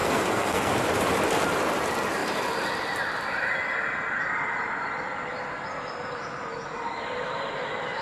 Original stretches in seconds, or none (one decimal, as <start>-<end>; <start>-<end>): 0.7-8.0